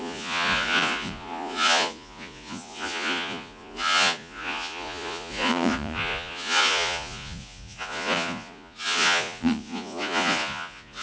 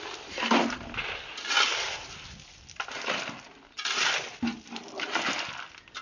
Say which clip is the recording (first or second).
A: second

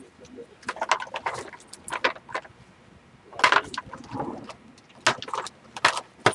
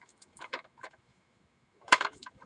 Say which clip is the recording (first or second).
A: first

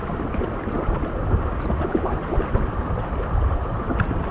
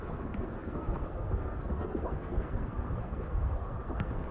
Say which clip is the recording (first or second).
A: first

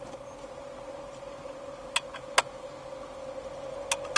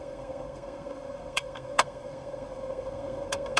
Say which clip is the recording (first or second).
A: first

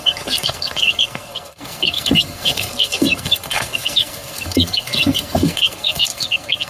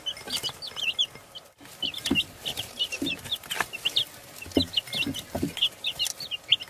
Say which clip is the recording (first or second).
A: second